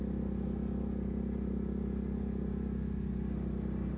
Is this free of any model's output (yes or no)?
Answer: yes